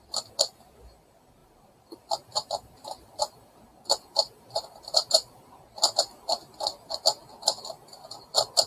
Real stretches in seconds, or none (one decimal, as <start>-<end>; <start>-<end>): 0.0-1.4; 5.6-8.7